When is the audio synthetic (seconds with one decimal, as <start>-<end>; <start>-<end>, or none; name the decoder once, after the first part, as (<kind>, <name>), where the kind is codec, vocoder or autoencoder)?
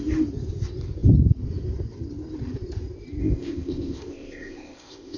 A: 3.2-5.2 (codec, ZipCodec)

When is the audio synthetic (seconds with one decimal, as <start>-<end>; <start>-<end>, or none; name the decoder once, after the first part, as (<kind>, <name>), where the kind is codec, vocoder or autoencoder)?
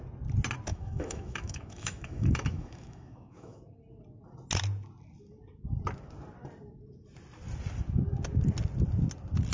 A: 0.7-3.6 (autoencoder, DAC-VAE)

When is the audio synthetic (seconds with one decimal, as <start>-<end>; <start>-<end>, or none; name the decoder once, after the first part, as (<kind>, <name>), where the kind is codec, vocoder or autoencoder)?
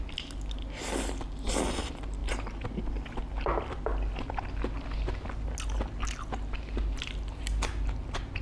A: none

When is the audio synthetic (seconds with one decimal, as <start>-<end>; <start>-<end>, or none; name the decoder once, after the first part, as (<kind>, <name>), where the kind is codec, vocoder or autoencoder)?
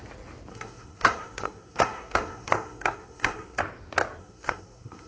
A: 0.5-3.6 (codec, SNAC); 4.2-5.1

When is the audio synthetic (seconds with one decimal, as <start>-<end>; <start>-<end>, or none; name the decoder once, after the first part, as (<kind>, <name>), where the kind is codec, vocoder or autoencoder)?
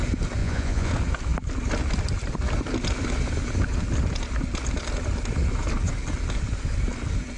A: 0.4-0.9 (vocoder, Vocos)